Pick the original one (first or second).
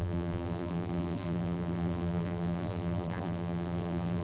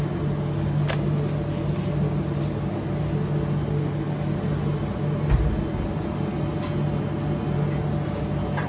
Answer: second